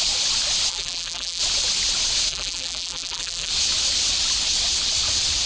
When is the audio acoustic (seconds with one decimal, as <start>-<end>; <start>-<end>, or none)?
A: 0.0-0.7; 1.4-2.3; 3.5-5.5